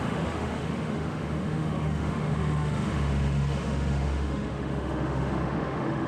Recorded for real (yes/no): no